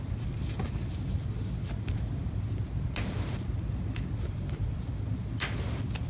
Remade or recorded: recorded